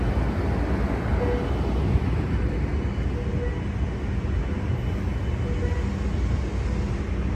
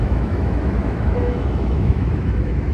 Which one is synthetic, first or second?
second